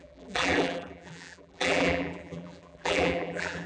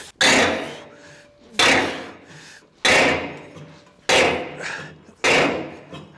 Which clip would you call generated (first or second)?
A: first